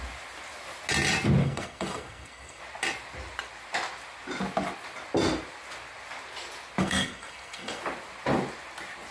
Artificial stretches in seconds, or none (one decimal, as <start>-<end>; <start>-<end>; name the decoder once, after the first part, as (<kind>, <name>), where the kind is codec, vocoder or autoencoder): 1.4-2.6 (codec, SNAC); 6.8-7.8